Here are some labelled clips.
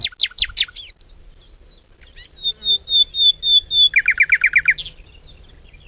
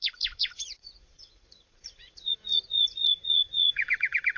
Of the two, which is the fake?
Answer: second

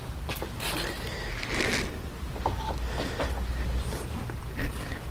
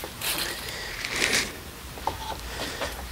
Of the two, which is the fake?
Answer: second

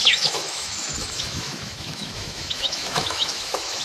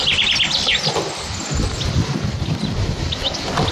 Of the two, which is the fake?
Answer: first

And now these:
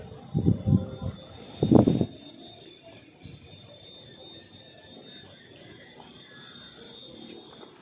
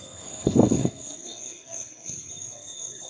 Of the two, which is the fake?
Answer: second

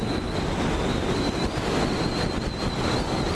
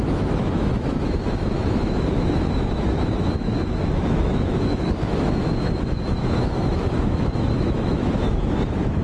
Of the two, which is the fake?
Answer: second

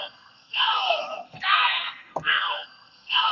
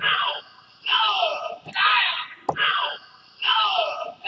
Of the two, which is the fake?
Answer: first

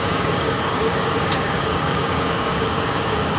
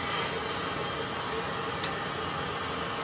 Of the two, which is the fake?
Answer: first